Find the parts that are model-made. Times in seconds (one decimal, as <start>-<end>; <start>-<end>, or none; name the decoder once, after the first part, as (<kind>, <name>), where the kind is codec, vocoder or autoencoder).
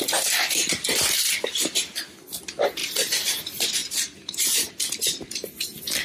2.8-3.4 (vocoder, BigVGAN v2); 3.8-4.7